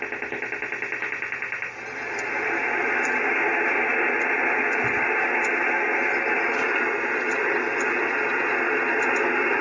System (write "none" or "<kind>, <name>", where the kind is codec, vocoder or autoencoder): none